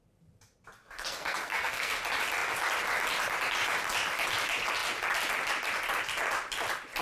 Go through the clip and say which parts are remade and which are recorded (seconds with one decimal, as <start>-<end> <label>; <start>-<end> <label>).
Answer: 0.0-0.8 recorded; 0.8-2.0 remade; 2.0-7.0 recorded